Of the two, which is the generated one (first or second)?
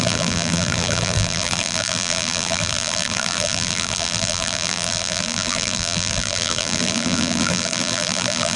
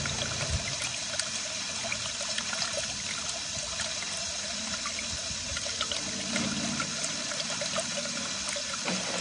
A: first